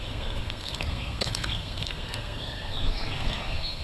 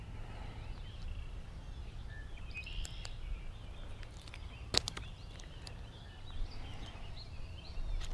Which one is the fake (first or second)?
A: first